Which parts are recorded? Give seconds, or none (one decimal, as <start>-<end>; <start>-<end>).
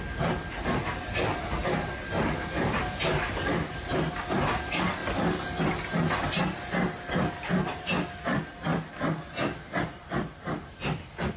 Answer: 0.0-11.4